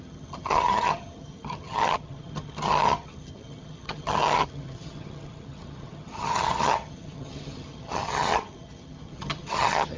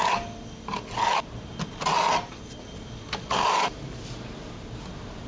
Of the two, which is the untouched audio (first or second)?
second